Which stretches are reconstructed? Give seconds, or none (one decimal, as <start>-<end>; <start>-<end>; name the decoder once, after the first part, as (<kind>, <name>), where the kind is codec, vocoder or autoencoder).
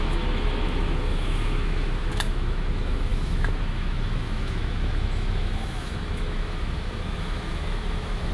0.0-8.3 (autoencoder, DAC-VAE)